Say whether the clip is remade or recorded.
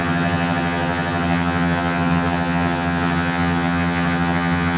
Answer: remade